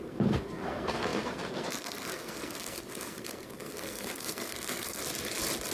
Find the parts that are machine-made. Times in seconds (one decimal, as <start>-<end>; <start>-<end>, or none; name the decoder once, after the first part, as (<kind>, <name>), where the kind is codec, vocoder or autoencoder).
0.0-5.0 (codec, SNAC)